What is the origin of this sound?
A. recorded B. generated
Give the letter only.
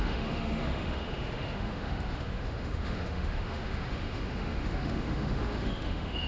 B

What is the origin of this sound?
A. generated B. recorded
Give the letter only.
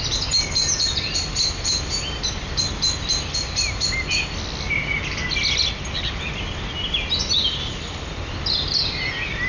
B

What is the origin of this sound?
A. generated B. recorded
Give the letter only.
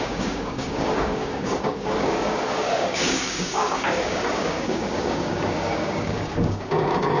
A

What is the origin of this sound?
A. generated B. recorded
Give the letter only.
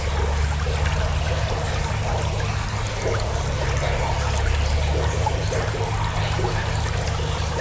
B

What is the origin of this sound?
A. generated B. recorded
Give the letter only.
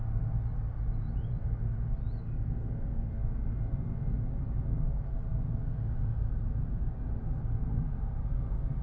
B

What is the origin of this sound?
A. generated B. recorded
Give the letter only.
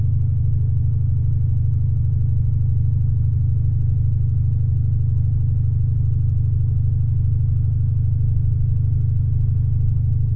B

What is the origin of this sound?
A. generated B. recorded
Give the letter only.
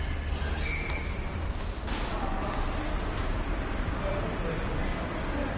B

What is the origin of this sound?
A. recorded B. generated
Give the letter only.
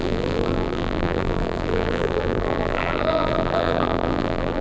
B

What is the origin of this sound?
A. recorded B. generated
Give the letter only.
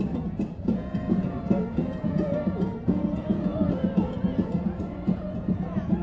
B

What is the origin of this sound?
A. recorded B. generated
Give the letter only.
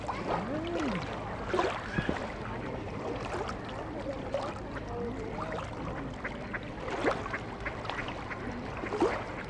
A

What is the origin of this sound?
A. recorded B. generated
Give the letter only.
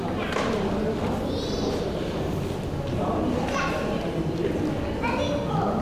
A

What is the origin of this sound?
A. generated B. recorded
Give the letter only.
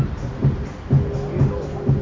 B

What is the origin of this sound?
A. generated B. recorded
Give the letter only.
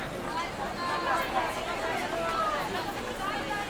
B